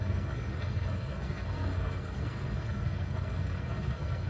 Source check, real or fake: fake